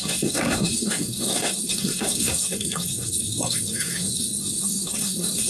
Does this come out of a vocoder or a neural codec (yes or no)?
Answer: yes